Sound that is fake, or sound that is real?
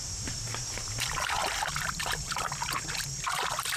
real